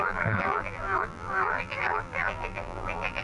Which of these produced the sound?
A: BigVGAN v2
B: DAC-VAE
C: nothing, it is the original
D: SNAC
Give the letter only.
A